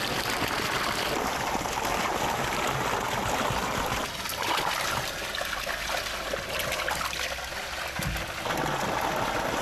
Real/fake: real